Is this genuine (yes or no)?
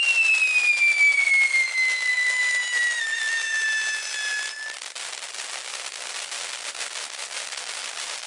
yes